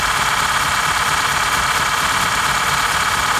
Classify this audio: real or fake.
real